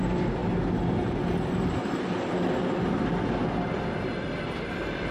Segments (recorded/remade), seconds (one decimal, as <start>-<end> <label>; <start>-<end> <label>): 0.0-5.1 recorded